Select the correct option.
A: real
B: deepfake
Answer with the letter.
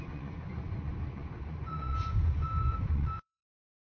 B